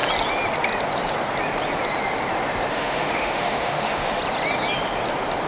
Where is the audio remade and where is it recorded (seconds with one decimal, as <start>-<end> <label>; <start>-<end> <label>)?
0.0-2.7 recorded; 2.7-4.2 remade; 4.2-5.5 recorded